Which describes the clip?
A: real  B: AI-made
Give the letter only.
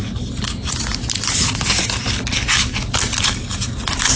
A